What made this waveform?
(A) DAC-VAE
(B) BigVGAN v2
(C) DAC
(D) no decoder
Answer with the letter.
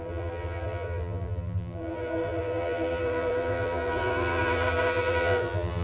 B